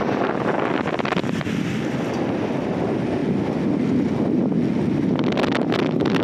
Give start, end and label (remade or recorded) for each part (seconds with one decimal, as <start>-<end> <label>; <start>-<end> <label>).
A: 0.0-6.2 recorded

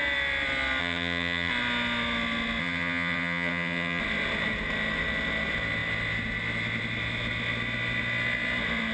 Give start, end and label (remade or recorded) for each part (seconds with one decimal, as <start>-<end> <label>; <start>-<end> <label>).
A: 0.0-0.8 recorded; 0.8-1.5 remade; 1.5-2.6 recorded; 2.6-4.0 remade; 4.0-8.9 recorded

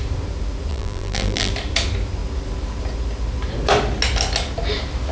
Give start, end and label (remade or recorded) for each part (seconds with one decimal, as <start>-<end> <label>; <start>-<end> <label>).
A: 0.0-0.7 recorded; 0.7-1.5 remade; 1.5-5.1 recorded

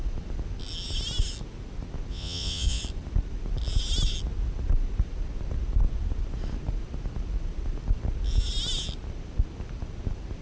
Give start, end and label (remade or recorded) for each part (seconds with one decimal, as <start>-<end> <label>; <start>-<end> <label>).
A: 0.0-2.1 recorded; 2.1-2.8 remade; 2.8-10.4 recorded